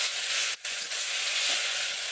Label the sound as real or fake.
fake